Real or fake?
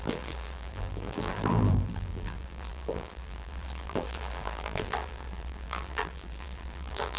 fake